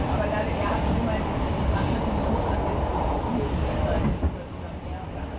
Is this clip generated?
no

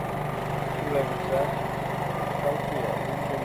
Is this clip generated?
no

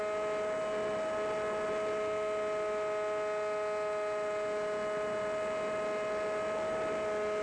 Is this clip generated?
no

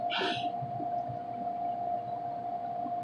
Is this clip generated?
no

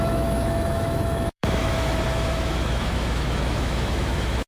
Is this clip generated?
yes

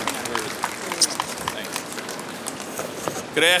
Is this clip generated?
no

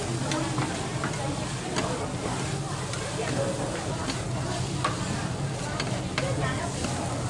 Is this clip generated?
no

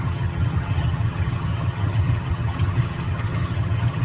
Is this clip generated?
yes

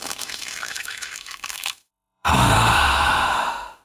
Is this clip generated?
yes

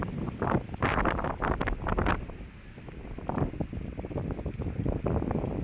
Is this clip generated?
no